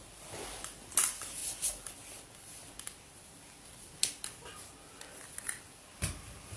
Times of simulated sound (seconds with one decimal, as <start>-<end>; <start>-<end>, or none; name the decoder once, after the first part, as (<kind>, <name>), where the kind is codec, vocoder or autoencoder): none